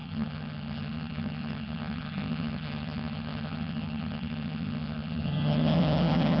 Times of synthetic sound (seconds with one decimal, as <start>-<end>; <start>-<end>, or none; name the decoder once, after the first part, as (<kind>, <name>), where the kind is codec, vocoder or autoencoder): 0.0-6.4 (vocoder, HiFi-GAN)